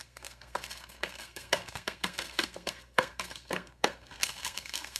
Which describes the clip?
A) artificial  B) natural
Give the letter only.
A